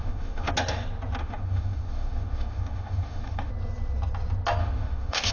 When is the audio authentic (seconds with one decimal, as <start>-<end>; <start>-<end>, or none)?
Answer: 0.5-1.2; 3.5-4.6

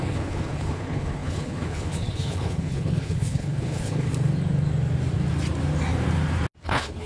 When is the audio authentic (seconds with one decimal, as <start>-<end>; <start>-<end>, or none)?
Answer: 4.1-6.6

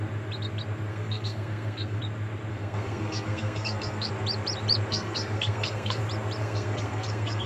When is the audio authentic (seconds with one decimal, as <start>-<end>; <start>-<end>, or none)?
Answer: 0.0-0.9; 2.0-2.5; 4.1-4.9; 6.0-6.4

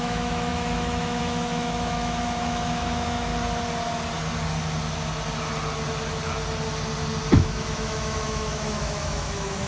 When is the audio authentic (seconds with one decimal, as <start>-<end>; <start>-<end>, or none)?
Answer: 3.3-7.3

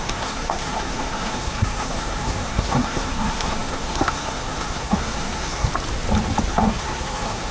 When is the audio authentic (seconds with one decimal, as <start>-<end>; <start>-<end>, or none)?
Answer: 5.7-6.5